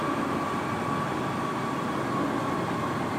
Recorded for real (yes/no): yes